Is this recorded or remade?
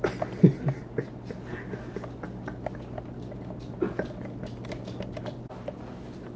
recorded